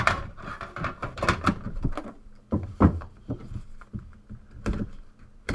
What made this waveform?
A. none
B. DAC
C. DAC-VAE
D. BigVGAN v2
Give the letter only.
D